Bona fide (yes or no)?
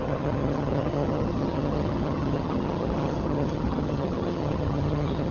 no